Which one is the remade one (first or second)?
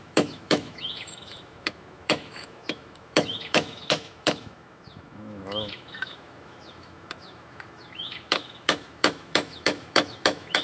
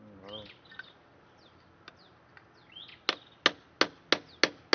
first